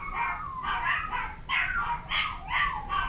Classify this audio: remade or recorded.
recorded